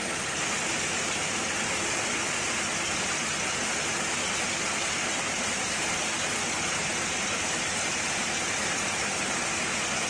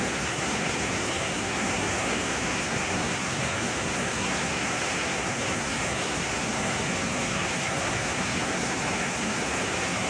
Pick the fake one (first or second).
second